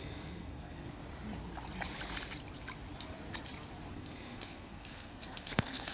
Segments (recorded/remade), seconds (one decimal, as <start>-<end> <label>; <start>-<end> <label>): 0.0-1.0 remade; 1.0-3.9 recorded; 3.9-5.9 remade